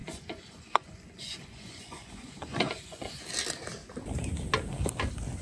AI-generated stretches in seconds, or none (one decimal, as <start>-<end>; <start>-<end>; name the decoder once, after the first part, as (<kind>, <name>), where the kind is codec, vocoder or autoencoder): 0.0-3.2 (vocoder, Vocos)